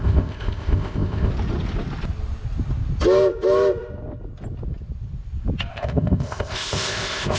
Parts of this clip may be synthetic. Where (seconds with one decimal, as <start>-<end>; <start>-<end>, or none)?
0.0-1.3; 5.7-7.4